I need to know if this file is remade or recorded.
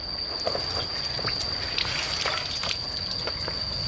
recorded